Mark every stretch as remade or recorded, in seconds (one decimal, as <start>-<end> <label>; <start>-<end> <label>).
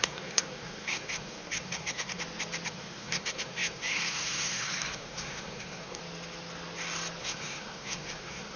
0.0-2.2 remade; 2.2-2.7 recorded; 2.7-6.0 remade; 6.0-7.2 recorded; 7.2-8.6 remade